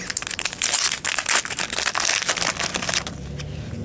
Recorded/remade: recorded